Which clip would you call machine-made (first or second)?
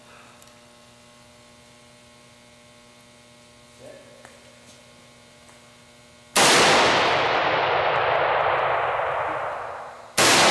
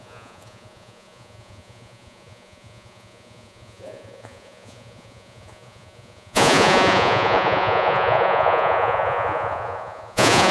second